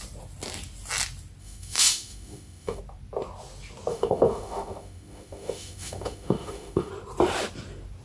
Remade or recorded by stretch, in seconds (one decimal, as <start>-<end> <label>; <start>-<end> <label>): 0.0-1.4 recorded; 1.4-2.8 remade; 2.8-3.9 recorded; 3.9-6.9 remade; 6.9-8.0 recorded